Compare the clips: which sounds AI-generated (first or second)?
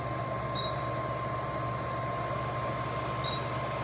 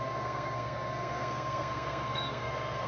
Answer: second